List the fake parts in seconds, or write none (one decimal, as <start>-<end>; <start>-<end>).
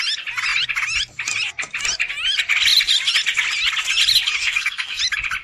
4.4-5.0